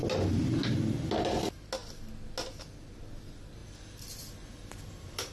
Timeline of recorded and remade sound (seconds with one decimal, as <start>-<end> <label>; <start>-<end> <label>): 0.0-5.3 recorded